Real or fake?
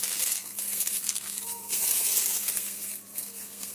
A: fake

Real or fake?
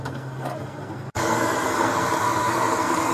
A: fake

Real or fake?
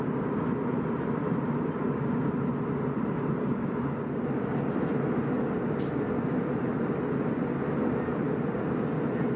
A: real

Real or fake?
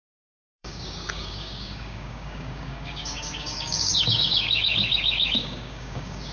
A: fake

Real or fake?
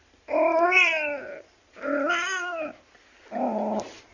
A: fake